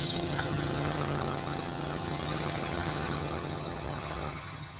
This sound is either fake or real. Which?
fake